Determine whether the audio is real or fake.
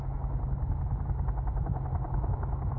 real